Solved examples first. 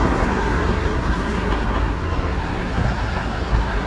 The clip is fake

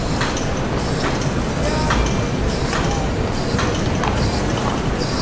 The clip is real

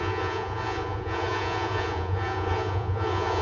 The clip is fake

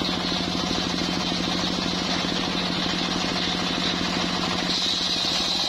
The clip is real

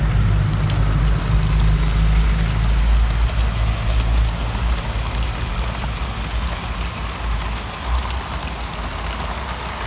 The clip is real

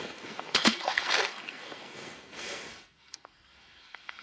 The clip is fake